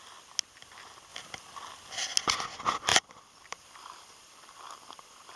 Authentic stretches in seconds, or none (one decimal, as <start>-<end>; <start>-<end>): 0.0-2.9; 5.0-5.4

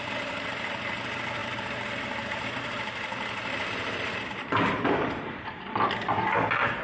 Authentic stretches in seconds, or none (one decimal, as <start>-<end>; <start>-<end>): 0.0-1.4; 5.5-6.8